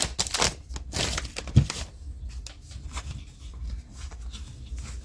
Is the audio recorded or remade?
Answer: recorded